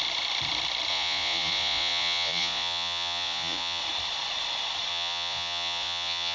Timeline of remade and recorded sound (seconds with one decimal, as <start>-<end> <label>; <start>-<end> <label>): 0.0-0.9 recorded; 0.9-3.8 remade; 3.8-4.9 recorded; 4.9-6.3 remade

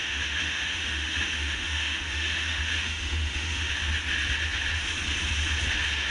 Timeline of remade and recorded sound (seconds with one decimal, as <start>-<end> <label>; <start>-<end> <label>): 0.0-3.7 remade; 3.7-6.1 recorded

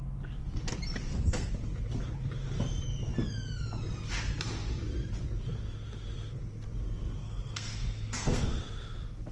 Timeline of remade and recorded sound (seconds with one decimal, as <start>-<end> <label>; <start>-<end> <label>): 0.0-1.0 recorded; 1.0-1.5 remade; 1.5-7.2 recorded; 7.2-8.6 remade; 8.6-9.3 recorded

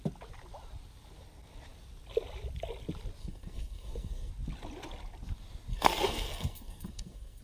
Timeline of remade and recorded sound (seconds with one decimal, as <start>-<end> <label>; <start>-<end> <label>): 0.0-3.2 recorded; 3.2-4.3 remade; 4.3-5.7 recorded; 5.7-7.4 remade

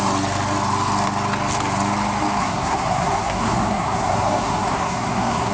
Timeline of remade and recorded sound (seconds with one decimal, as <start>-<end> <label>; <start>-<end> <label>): 0.0-2.4 recorded; 2.4-5.5 remade

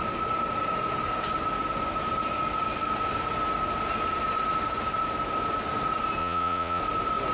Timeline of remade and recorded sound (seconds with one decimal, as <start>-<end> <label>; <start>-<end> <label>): 0.0-6.2 recorded; 6.2-6.8 remade; 6.8-7.3 recorded